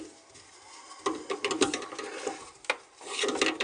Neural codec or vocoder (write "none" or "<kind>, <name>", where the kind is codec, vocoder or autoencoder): none